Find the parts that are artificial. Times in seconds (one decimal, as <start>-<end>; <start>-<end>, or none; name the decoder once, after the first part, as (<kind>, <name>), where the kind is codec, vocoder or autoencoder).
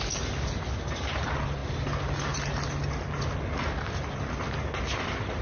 none